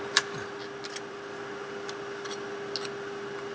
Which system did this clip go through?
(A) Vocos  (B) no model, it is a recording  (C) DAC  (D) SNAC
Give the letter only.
B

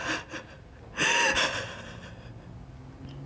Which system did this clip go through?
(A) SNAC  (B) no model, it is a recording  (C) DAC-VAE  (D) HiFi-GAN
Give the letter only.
B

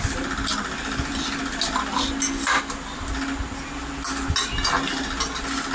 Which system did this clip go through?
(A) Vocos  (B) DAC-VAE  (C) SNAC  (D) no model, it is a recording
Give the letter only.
D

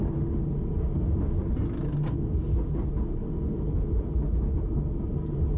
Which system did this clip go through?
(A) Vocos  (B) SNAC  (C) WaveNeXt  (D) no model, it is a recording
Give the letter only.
D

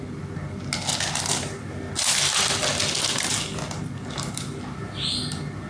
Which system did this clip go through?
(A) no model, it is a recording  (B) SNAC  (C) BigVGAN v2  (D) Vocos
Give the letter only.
A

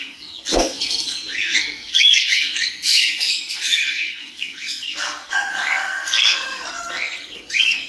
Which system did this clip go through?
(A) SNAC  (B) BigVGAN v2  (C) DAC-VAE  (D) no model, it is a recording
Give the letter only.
A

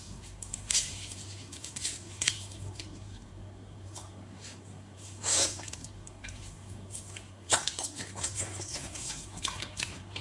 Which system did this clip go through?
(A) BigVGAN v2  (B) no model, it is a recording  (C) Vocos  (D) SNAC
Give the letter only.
D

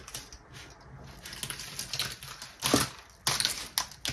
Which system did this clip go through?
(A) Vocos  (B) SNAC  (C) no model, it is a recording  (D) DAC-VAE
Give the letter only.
C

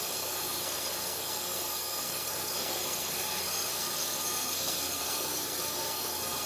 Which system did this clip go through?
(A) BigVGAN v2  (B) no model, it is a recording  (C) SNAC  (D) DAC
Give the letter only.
C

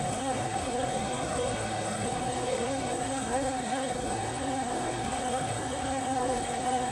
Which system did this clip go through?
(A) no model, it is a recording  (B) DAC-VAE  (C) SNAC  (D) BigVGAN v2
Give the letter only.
C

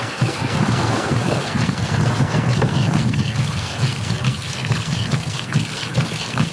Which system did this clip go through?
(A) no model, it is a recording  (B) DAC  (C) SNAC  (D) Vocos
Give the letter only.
C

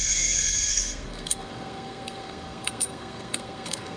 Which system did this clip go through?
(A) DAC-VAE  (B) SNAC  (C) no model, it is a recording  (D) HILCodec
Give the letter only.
B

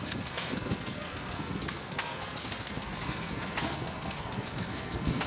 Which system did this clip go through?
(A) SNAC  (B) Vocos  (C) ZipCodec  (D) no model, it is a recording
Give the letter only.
A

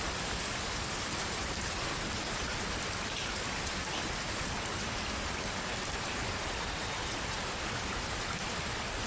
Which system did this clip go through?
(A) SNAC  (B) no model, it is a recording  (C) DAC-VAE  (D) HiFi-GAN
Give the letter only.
B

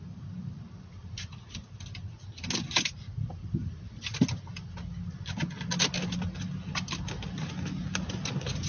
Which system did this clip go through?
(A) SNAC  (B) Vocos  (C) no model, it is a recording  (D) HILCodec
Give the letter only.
C